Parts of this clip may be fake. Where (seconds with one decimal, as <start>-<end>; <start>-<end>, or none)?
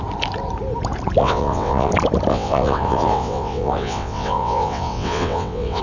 1.2-1.9; 2.3-5.8